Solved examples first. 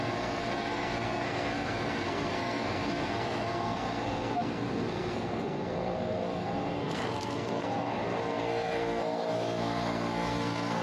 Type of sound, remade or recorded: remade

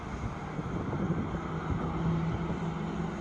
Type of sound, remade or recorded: recorded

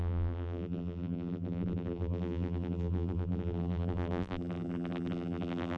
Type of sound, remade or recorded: remade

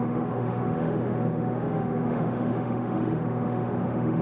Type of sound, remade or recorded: remade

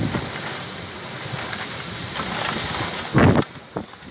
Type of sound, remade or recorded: recorded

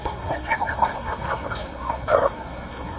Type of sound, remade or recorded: remade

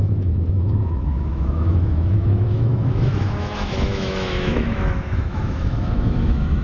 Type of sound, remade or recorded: remade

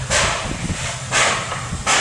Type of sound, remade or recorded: recorded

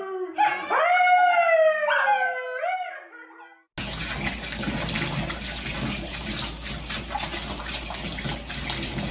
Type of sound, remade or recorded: recorded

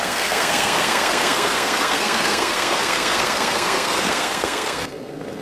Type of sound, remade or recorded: remade